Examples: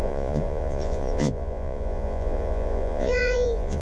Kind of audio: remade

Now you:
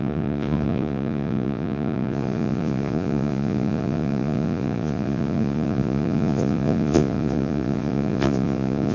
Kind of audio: remade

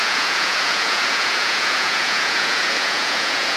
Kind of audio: remade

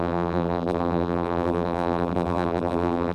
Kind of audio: remade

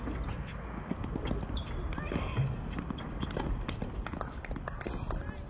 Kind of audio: recorded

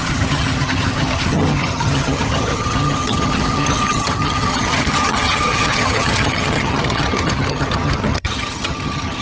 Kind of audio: remade